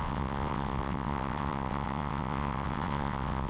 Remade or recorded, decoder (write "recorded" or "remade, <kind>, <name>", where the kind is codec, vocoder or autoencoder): remade, vocoder, WaveNeXt